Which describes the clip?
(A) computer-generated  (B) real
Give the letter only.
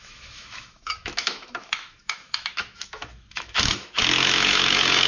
A